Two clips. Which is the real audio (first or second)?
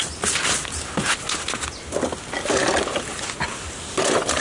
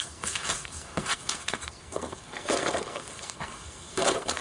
first